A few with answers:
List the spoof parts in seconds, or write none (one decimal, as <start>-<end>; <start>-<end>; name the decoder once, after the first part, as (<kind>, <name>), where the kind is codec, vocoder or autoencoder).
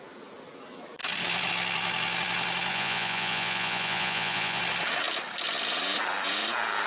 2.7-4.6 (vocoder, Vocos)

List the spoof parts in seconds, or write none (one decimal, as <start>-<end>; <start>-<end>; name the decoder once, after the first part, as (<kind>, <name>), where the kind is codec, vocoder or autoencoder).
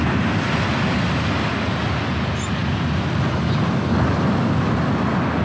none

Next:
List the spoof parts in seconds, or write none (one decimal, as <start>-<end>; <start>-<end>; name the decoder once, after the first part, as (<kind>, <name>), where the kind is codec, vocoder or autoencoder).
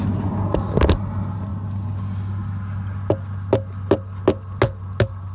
none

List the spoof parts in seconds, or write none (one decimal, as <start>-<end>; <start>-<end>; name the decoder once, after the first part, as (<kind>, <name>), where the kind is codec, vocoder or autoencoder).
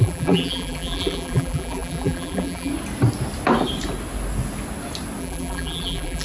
0.0-2.7 (vocoder, BigVGAN v2); 5.2-6.2